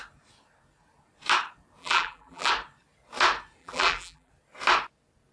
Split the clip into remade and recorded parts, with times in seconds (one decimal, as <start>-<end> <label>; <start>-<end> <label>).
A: 0.0-1.8 recorded; 1.8-2.5 remade; 2.5-3.6 recorded; 3.6-4.3 remade; 4.3-5.3 recorded